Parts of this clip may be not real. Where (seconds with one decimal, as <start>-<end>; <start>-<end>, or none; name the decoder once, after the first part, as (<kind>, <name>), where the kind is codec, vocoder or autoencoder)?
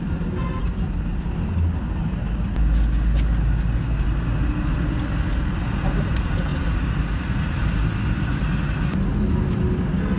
none